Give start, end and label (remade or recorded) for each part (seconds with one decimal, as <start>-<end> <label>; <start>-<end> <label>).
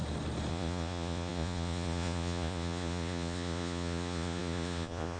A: 0.0-0.5 recorded; 0.5-5.2 remade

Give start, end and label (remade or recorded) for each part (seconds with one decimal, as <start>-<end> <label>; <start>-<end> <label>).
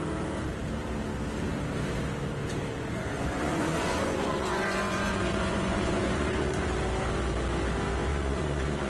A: 0.0-2.7 recorded; 2.7-6.7 remade; 6.7-8.1 recorded; 8.1-8.9 remade